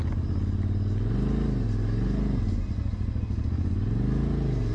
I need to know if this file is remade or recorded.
recorded